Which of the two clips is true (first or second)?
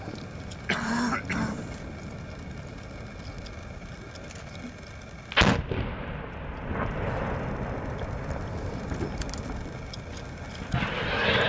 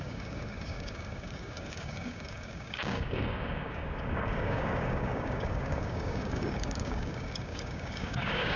first